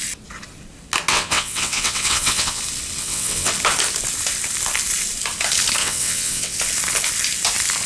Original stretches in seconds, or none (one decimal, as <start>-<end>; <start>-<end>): 0.0-1.1; 2.6-3.0; 3.5-5.8; 6.6-7.9